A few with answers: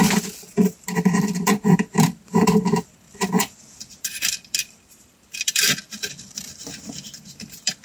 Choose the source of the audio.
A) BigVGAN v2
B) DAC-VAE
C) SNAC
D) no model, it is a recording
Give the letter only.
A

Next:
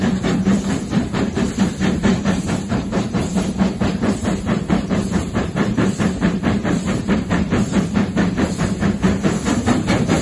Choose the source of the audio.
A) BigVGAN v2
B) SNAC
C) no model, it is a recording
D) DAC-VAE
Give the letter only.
A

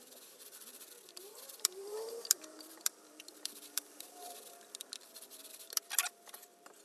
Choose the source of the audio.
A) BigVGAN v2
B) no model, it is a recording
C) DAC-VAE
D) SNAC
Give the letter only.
A